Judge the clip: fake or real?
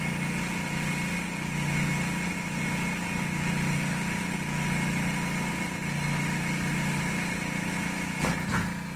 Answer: real